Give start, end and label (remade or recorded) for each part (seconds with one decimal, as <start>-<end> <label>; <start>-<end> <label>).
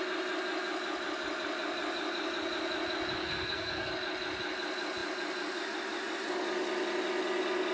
0.0-3.2 recorded; 3.2-3.9 remade; 3.9-7.7 recorded